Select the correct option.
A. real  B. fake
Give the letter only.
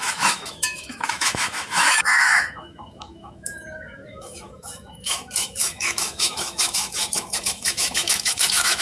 B